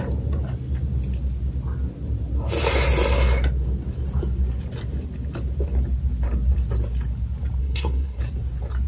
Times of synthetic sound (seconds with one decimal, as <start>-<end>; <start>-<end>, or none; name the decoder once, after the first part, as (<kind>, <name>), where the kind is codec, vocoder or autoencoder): 7.6-8.2 (codec, SNAC)